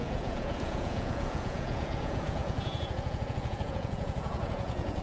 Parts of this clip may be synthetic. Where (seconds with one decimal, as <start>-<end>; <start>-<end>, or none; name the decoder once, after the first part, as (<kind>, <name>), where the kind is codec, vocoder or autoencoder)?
0.0-5.0 (vocoder, Vocos)